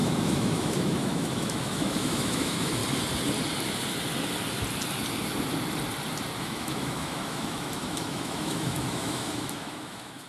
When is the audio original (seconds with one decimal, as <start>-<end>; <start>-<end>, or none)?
2.8-6.4

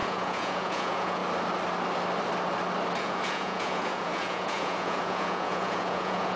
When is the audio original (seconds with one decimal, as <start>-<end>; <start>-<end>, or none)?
1.2-3.0

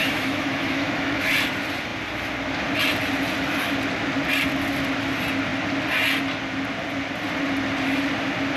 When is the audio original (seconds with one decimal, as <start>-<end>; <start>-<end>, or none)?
1.3-8.6

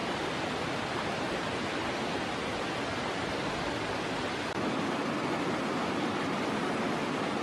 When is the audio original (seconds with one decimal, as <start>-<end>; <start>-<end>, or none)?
0.0-7.4

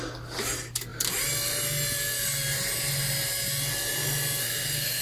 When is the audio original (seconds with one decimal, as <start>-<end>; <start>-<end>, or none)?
0.0-4.4

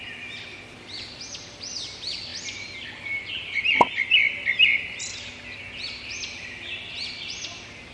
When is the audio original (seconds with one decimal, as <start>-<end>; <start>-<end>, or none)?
0.0-7.9

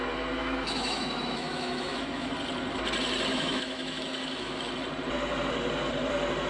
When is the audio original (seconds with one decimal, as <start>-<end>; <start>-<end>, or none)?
0.0-0.4; 2.3-3.3; 4.7-6.5

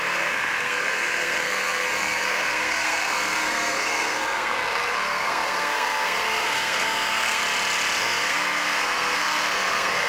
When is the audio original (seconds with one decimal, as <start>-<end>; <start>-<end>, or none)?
7.4-8.0